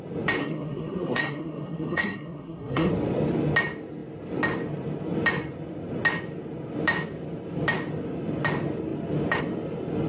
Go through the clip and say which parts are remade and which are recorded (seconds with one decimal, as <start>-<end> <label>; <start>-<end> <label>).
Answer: 0.0-0.4 recorded; 0.4-2.9 remade; 2.9-10.1 recorded